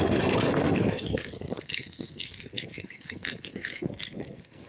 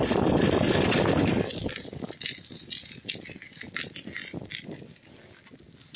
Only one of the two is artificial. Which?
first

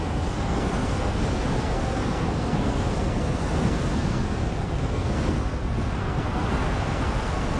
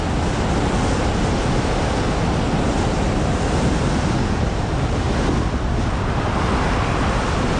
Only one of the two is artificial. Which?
first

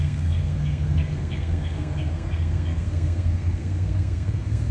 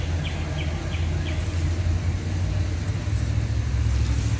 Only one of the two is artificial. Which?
first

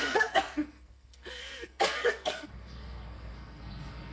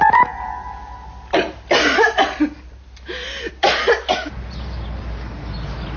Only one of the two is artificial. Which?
first